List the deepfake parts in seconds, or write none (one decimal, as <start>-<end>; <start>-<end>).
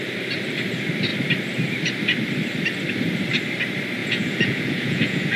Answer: 4.0-5.4